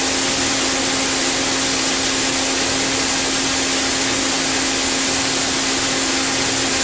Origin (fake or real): real